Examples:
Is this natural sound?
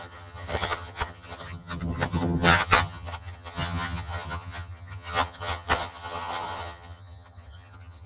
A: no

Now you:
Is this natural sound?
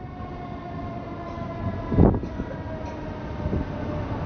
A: yes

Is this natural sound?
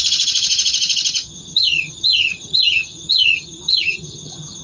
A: no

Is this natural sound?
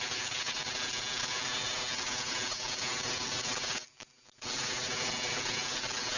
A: yes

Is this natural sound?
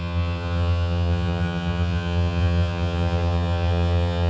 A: no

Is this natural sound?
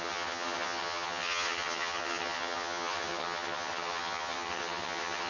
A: no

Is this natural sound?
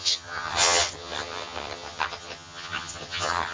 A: no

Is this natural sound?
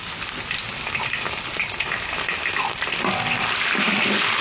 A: yes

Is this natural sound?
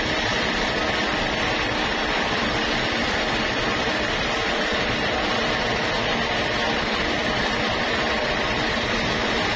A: yes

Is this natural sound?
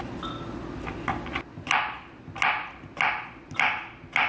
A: yes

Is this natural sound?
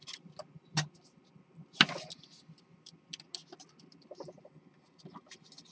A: yes